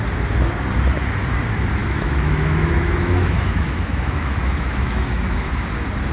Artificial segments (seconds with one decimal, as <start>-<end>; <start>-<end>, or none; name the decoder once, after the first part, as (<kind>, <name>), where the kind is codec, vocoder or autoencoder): 1.8-5.5 (autoencoder, DAC-VAE)